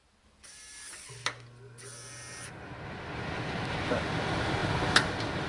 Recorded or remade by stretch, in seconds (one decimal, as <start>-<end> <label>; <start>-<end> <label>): 0.0-5.5 recorded